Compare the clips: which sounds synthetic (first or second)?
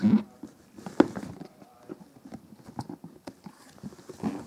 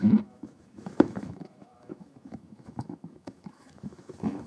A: second